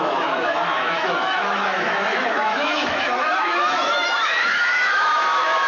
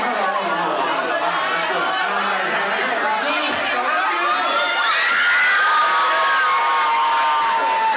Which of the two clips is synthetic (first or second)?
first